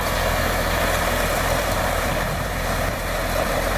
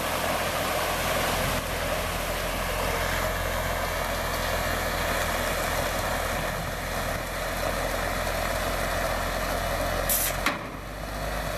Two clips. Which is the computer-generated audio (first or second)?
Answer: first